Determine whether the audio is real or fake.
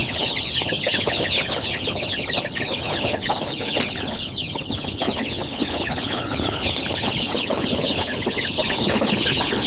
fake